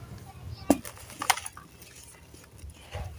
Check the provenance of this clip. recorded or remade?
recorded